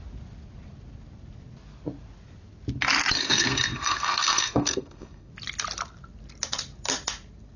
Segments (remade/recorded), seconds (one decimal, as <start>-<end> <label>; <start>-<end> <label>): 0.0-3.2 recorded; 3.2-5.3 remade; 5.3-7.6 recorded